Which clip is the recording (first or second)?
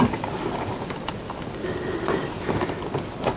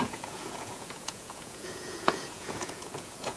first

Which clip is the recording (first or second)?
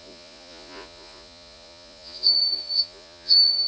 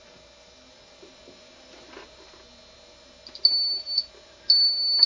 second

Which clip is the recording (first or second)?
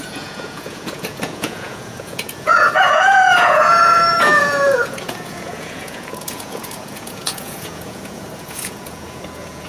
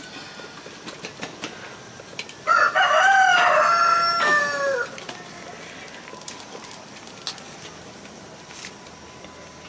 second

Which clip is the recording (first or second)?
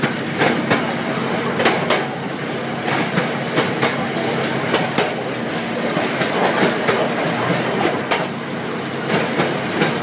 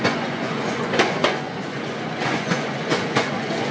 first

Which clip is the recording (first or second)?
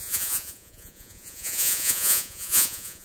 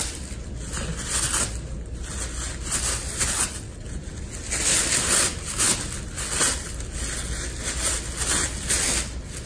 second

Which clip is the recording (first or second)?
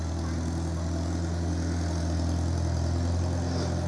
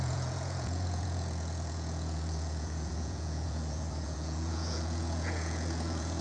first